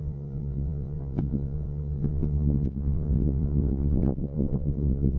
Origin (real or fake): fake